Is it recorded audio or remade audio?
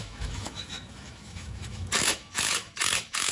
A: remade